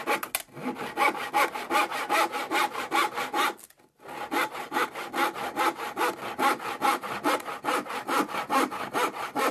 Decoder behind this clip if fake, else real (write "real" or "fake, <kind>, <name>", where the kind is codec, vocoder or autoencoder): real